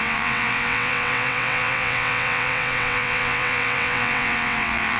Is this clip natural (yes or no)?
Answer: no